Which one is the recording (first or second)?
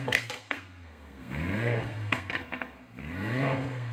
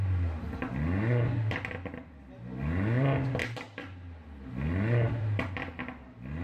second